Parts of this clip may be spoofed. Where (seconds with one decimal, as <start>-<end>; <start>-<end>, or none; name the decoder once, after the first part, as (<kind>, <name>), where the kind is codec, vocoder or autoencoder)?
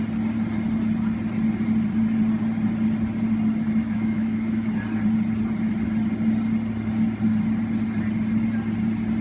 3.8-4.7 (autoencoder, DAC-VAE)